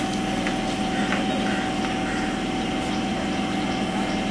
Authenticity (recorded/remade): recorded